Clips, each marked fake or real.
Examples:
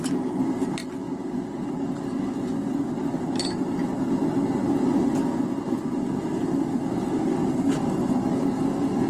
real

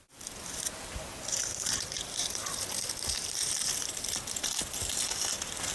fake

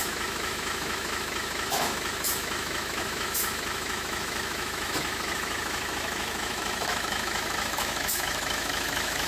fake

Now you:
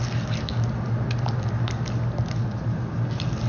real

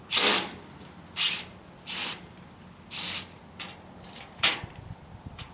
real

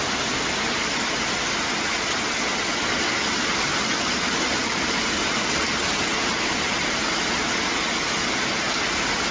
real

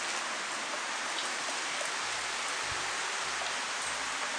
real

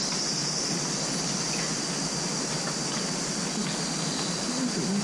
real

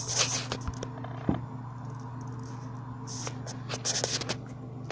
real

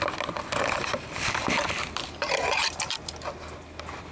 real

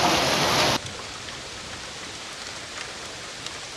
real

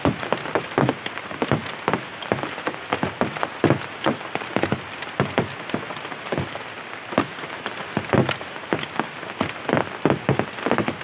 real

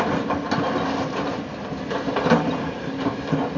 real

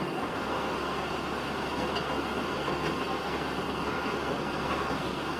fake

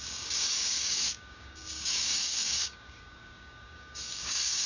fake